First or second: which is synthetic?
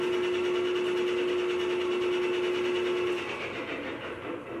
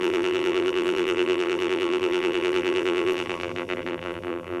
second